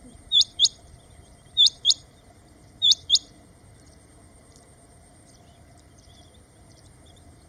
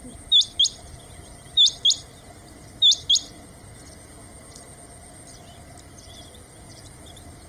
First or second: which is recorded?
second